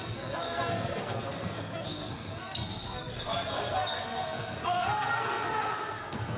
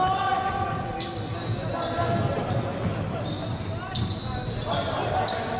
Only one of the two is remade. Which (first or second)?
first